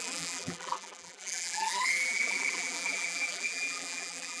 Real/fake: fake